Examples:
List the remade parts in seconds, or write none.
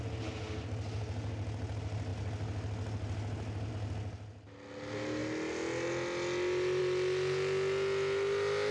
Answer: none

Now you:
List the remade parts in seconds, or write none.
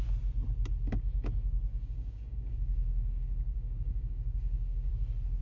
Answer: 1.7-4.9 (codec, DAC)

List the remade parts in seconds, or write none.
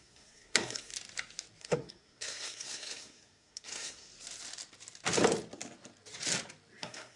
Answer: 0.0-0.9 (codec, SNAC); 1.6-4.1; 6.8-7.2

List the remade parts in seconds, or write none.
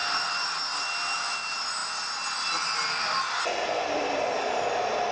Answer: 0.0-0.8 (vocoder, BigVGAN v2)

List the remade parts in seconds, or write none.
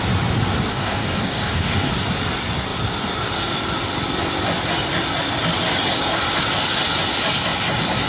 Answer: 0.7-1.9 (codec, DAC)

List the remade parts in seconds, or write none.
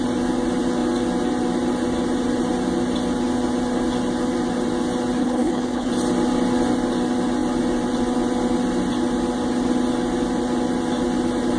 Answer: 5.2-5.9 (codec, HILCodec)